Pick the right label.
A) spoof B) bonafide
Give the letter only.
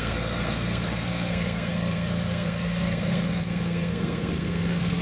A